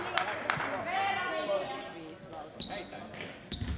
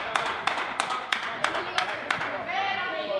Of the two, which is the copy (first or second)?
second